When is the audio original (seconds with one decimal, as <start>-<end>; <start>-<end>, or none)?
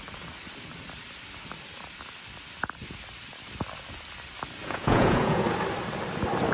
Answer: 0.0-4.6; 5.4-6.5